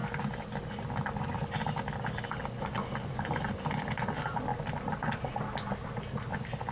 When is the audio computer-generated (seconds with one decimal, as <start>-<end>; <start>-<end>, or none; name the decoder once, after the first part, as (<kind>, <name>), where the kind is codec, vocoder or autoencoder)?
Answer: none